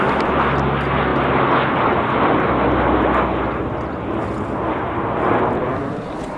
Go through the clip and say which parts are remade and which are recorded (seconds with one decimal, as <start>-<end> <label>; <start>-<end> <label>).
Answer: 0.0-6.4 recorded